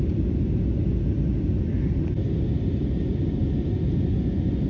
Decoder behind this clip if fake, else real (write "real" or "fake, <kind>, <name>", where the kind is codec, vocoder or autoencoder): real